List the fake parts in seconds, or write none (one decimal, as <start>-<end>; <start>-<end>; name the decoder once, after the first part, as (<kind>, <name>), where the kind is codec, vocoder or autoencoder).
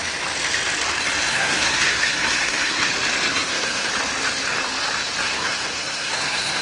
1.3-2.9 (codec, SNAC); 3.3-3.9; 5.2-6.6